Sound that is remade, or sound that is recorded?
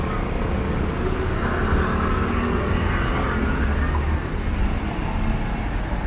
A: recorded